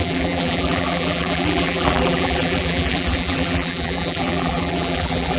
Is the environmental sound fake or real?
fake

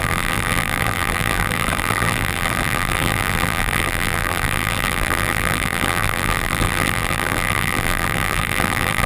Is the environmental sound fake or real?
fake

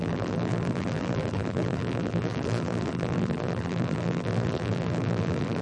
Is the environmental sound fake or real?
fake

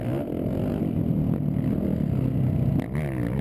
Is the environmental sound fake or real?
real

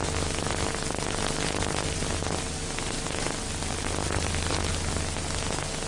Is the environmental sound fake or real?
real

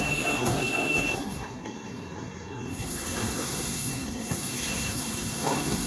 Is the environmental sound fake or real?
fake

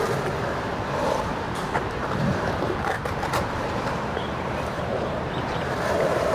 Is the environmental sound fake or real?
fake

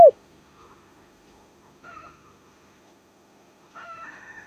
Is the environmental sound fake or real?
fake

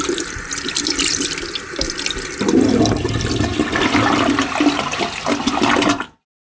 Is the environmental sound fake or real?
real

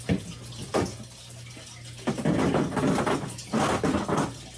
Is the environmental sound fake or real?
real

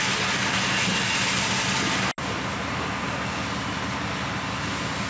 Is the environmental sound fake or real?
real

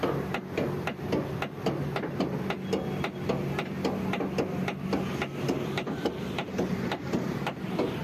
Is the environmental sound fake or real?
real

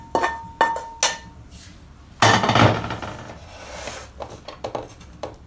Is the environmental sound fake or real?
real